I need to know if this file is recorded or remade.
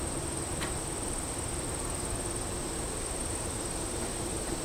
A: recorded